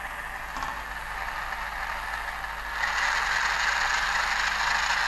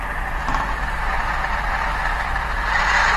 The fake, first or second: second